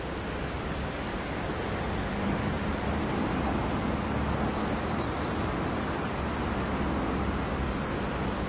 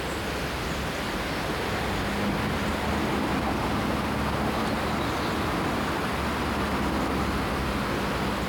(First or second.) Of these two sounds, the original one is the second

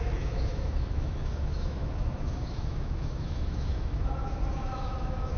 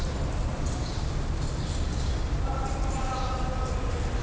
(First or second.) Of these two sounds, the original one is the second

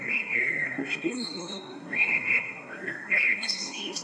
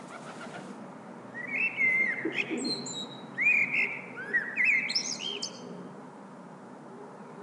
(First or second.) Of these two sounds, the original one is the second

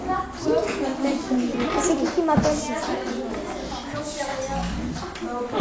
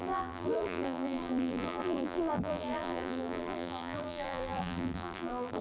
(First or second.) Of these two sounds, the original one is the first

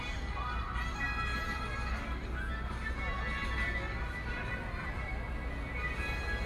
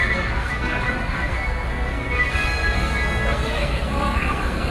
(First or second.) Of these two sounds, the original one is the first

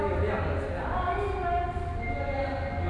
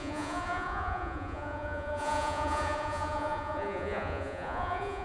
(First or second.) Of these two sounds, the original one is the first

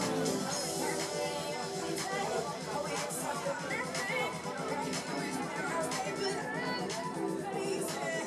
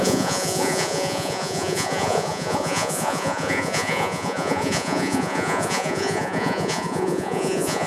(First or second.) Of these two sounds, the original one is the first